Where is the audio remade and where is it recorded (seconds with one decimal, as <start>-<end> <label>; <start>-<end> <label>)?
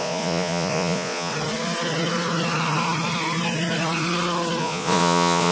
0.0-1.3 remade; 1.3-4.6 recorded; 4.6-5.5 remade